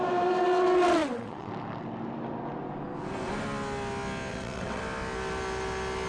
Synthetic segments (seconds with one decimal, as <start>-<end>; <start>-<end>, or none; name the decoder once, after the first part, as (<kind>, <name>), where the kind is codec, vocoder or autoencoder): 1.0-1.5 (vocoder, WaveNeXt); 4.3-4.8